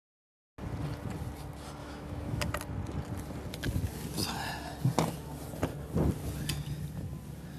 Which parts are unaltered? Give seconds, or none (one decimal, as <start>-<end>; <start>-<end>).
0.0-1.8; 2.5-7.6